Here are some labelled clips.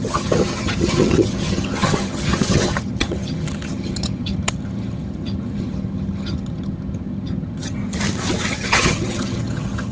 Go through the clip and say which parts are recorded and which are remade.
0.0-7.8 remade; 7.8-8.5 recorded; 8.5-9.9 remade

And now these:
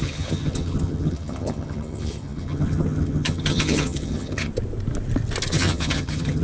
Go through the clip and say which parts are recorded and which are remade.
0.0-4.5 remade; 4.5-5.5 recorded; 5.5-6.4 remade

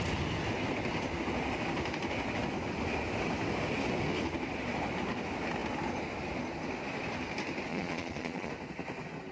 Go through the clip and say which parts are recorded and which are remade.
0.0-7.7 recorded; 7.7-8.5 remade; 8.5-9.3 recorded

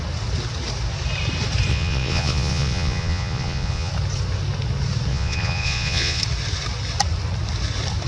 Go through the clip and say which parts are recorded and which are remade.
0.0-1.7 recorded; 1.7-3.9 remade; 3.9-5.1 recorded; 5.1-6.2 remade; 6.2-8.1 recorded